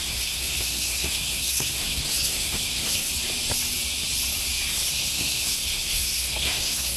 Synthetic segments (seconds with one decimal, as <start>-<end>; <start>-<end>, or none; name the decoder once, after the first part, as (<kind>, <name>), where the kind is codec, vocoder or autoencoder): 0.0-3.1 (codec, SNAC); 4.7-7.0